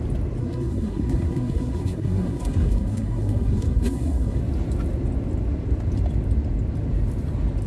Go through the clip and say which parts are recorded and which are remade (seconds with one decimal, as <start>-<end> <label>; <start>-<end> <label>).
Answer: 0.0-0.4 recorded; 0.4-4.4 remade; 4.4-7.7 recorded